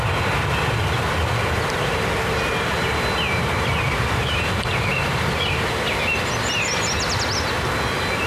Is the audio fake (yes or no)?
no